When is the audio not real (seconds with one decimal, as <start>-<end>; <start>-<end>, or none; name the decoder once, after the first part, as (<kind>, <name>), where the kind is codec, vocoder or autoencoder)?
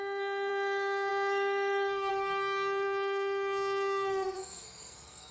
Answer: 0.0-5.3 (codec, SNAC)